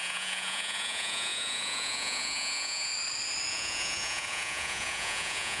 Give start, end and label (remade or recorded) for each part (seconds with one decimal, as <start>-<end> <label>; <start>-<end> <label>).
0.0-2.9 remade; 2.9-3.5 recorded; 3.5-5.6 remade